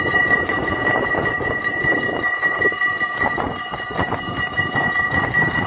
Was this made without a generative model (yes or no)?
no